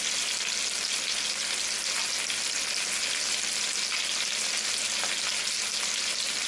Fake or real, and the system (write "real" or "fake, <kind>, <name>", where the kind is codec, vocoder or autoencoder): real